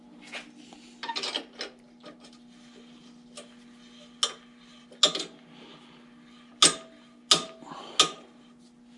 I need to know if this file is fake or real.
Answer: real